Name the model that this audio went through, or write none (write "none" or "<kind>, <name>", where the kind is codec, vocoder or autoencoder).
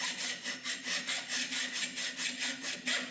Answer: none